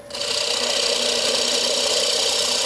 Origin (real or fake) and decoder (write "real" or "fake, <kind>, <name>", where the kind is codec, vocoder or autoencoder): real